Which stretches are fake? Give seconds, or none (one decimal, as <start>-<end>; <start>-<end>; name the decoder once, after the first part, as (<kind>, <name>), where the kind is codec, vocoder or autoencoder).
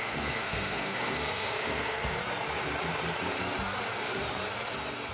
0.0-2.2 (codec, SNAC)